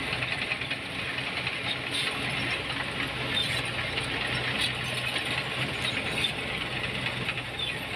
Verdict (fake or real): real